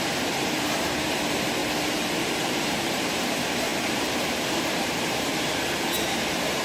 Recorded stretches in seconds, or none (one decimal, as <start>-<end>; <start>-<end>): 1.6-2.2